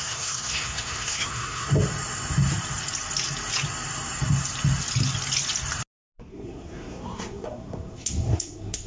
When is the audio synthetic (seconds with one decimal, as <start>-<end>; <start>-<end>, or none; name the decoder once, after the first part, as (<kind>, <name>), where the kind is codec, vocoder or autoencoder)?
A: 0.0-1.7 (codec, SNAC); 6.3-8.9